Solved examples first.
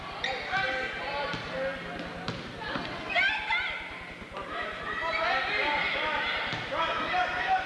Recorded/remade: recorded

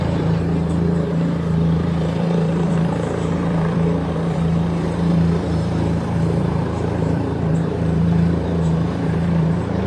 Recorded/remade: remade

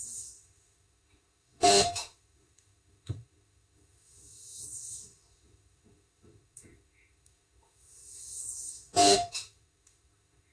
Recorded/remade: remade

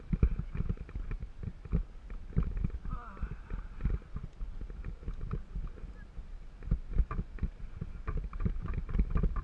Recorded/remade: recorded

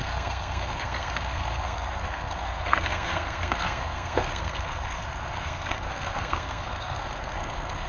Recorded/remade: remade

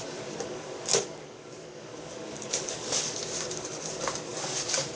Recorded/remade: remade